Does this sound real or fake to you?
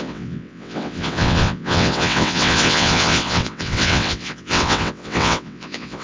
fake